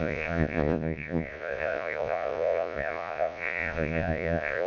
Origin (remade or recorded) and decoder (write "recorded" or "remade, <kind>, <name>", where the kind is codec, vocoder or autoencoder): remade, vocoder, Vocos